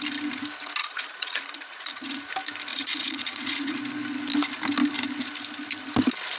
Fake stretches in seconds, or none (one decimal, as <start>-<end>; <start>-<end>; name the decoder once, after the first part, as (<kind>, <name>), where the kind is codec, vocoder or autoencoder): 0.8-2.3 (vocoder, Vocos); 2.7-3.8